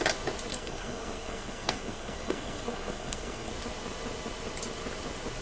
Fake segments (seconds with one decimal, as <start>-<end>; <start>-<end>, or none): 0.5-3.5